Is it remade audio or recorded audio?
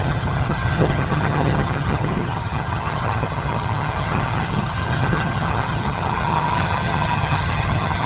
remade